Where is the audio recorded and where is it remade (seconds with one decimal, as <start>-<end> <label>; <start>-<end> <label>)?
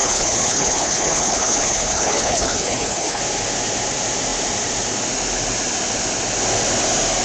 0.0-3.2 remade; 3.2-7.2 recorded